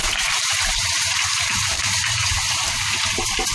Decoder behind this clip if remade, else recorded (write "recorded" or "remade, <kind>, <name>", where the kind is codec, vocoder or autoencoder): remade, vocoder, BigVGAN v2